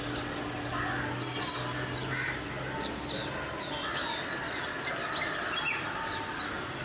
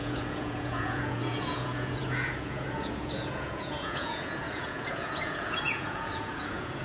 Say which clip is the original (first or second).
first